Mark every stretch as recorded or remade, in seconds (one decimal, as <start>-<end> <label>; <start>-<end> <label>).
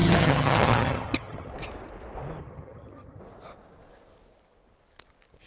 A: 0.0-1.5 remade; 1.5-2.4 recorded; 2.4-3.2 remade; 3.2-5.5 recorded